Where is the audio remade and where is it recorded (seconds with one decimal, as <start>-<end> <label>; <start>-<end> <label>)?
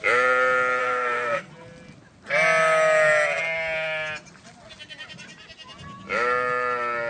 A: 0.0-0.8 recorded; 0.8-1.5 remade; 1.5-7.1 recorded